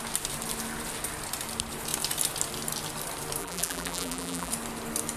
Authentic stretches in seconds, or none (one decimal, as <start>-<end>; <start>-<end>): 0.0-3.4; 4.5-5.2